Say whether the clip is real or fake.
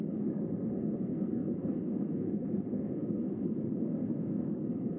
fake